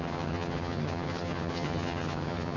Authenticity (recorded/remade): remade